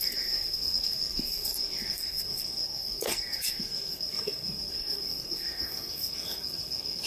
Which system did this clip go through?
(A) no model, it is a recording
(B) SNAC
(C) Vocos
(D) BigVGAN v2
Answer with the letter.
B